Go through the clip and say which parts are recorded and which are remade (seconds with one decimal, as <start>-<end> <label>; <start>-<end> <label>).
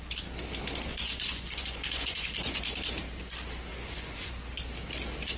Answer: 0.0-0.9 recorded; 0.9-2.6 remade; 2.6-3.7 recorded; 3.7-4.3 remade; 4.3-5.4 recorded